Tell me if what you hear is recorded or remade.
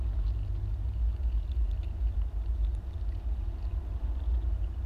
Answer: recorded